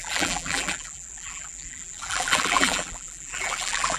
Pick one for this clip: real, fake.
fake